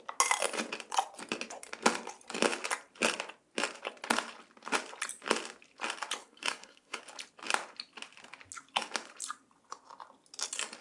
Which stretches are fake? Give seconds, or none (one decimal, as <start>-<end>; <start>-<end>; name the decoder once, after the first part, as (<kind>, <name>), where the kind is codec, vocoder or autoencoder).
6.2-7.0 (codec, SNAC)